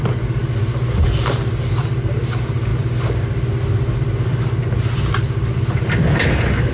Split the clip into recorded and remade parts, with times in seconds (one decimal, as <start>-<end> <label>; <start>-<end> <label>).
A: 0.0-6.7 recorded